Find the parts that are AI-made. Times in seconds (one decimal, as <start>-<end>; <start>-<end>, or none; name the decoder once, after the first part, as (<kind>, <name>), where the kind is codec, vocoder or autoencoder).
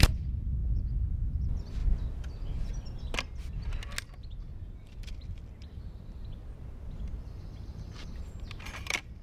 0.0-0.6 (vocoder, BigVGAN v2); 1.4-1.8; 4.4-6.4; 7.2-9.2